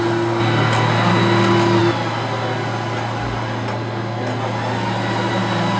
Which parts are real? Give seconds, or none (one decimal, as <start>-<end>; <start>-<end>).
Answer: 0.0-5.8